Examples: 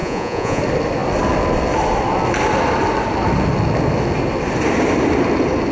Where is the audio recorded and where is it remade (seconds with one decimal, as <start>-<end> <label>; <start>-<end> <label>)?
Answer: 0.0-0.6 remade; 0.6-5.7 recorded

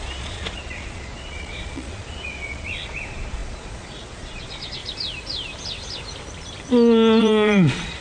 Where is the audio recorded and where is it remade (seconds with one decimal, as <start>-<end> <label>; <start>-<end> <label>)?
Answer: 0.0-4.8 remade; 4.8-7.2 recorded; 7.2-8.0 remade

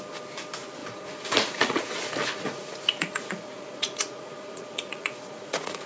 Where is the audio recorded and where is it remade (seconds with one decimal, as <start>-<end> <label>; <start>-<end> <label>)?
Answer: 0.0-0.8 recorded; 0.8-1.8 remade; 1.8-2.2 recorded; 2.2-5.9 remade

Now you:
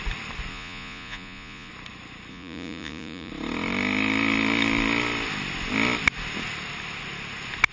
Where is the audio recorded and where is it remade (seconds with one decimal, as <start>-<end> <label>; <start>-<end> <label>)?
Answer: 0.0-0.5 recorded; 0.5-1.7 remade; 1.7-2.3 recorded; 2.3-3.3 remade; 3.3-7.7 recorded

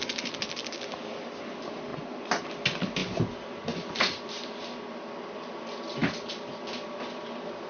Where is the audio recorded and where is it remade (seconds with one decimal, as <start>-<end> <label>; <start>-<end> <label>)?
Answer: 0.0-1.9 recorded; 1.9-2.4 remade; 2.4-7.7 recorded

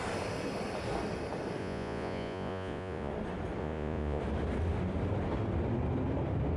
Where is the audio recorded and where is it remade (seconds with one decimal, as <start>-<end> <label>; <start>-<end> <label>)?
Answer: 0.0-1.6 recorded; 1.6-3.1 remade; 3.1-3.6 recorded; 3.6-4.2 remade; 4.2-6.6 recorded

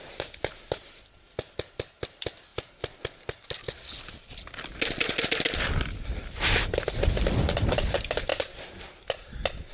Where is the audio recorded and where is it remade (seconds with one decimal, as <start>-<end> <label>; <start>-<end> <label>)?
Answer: 0.0-9.7 recorded

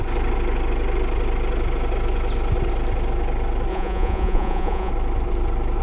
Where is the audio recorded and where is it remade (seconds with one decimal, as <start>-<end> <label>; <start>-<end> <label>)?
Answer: 0.0-3.7 recorded; 3.7-4.9 remade; 4.9-5.8 recorded